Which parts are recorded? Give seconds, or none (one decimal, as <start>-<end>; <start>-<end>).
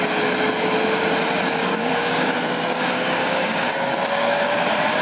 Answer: 0.0-1.6; 4.6-5.0